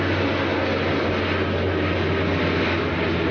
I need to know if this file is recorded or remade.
recorded